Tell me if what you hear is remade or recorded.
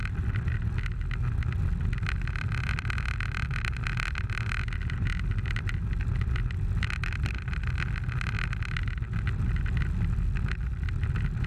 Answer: recorded